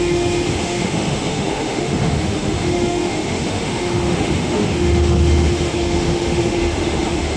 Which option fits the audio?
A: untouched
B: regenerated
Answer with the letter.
B